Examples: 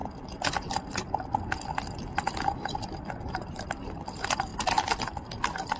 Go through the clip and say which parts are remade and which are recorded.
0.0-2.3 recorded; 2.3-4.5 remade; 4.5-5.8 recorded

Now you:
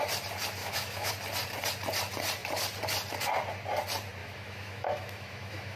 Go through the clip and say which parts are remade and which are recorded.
0.0-0.6 recorded; 0.6-1.1 remade; 1.1-4.2 recorded; 4.2-5.8 remade